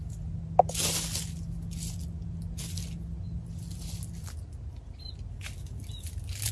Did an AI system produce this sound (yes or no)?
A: no